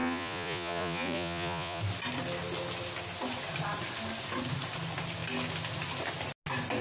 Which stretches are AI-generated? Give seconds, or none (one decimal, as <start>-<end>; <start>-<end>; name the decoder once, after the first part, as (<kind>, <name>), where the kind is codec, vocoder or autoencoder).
0.0-1.8 (vocoder, Vocos)